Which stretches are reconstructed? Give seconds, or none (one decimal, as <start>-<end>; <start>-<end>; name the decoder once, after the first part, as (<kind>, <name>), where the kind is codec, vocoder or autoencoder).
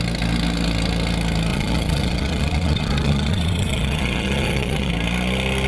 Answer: 1.5-4.9 (vocoder, Vocos)